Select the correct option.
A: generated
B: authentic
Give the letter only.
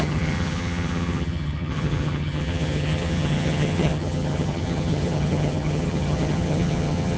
A